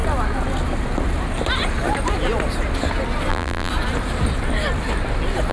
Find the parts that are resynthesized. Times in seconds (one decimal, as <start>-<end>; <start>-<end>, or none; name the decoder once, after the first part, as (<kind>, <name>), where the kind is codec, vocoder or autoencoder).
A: 3.3-3.7 (vocoder, BigVGAN v2)